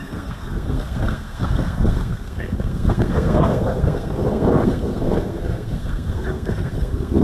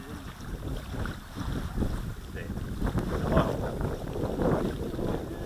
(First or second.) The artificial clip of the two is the first